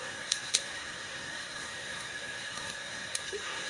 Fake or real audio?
fake